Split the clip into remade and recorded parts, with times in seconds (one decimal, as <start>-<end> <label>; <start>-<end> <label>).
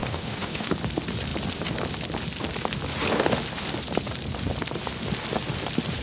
0.0-0.7 remade; 0.7-6.0 recorded